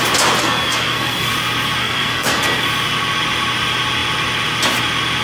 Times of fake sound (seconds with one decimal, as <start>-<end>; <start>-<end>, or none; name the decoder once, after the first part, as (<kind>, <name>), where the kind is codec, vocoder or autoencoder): 0.4-1.3 (codec, SNAC); 1.8-2.7